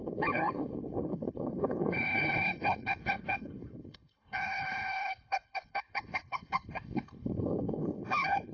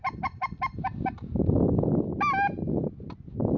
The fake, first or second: first